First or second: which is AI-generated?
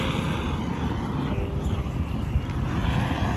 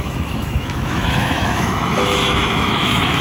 second